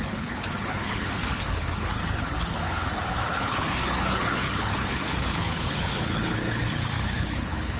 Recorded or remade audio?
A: remade